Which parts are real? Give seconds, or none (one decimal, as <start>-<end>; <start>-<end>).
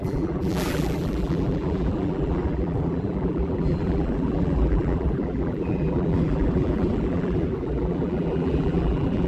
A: none